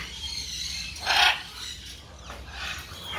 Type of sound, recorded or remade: recorded